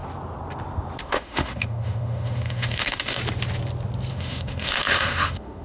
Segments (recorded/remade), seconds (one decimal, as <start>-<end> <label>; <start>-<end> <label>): 0.0-1.0 recorded; 1.0-3.2 remade; 3.2-4.1 recorded; 4.1-5.6 remade